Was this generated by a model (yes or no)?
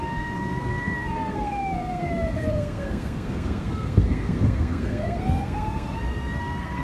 yes